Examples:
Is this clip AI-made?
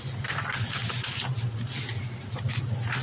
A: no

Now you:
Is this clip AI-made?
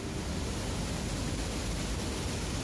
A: no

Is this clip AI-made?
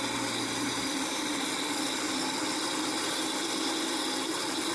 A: no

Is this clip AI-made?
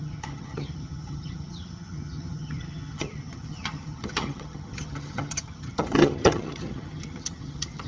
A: yes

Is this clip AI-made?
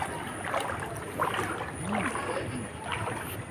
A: no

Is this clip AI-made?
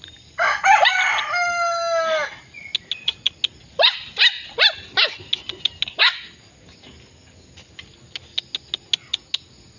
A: no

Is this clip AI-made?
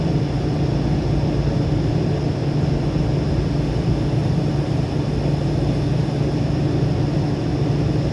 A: no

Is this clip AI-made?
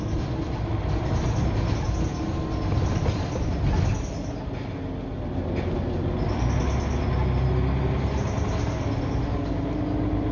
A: no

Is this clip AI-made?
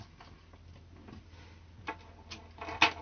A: no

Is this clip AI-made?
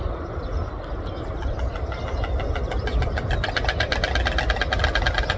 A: no